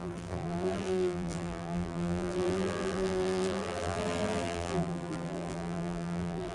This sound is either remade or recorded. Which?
remade